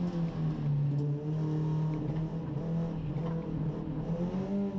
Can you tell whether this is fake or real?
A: real